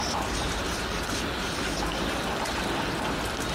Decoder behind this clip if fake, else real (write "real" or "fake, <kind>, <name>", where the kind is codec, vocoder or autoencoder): real